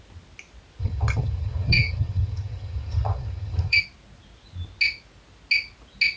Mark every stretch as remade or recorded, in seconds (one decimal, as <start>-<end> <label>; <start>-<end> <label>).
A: 0.0-0.8 recorded; 0.8-3.8 remade; 3.8-6.2 recorded